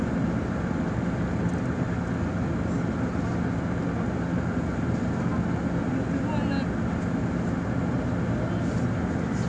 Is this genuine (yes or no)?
yes